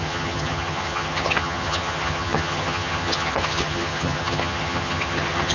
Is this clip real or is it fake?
fake